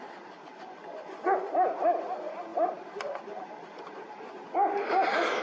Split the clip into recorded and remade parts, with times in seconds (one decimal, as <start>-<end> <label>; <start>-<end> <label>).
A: 0.0-0.5 recorded; 0.5-1.5 remade; 1.5-5.4 recorded